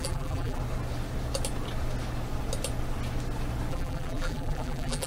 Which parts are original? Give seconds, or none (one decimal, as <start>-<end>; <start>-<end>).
0.6-3.7